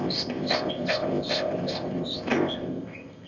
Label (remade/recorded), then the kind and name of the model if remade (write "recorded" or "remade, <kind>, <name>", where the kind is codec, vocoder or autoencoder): remade, codec, ZipCodec